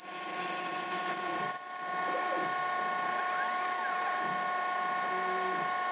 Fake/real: real